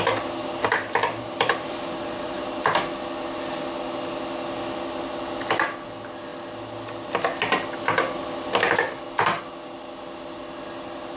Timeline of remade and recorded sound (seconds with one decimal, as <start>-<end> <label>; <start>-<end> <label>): 0.0-0.4 recorded; 0.4-2.8 remade; 2.8-11.2 recorded